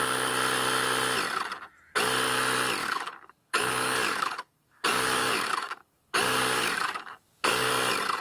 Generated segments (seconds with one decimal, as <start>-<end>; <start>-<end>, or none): 2.8-7.7